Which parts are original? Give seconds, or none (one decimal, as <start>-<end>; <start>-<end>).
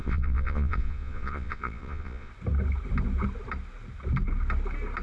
2.3-5.0